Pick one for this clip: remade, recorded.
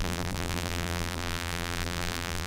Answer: remade